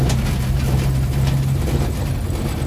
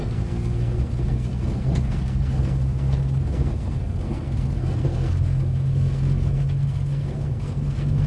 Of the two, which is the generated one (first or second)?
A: second